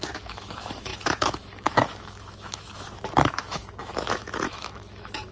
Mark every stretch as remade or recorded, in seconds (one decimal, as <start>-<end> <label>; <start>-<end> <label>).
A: 0.0-5.3 remade